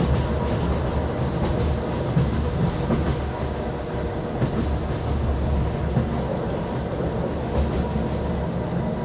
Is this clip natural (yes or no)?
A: yes